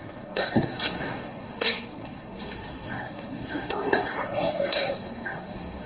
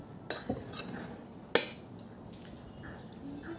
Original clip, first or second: second